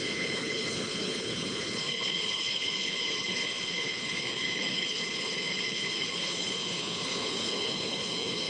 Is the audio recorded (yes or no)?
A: no